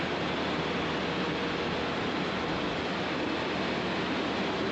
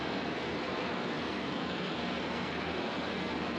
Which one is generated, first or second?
second